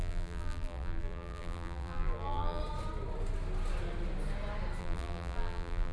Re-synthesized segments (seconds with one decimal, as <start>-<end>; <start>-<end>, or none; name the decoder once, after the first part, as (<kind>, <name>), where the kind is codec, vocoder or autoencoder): 0.0-2.6 (vocoder, BigVGAN v2); 4.8-5.9